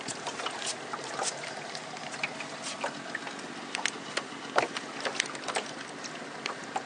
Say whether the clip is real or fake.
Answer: real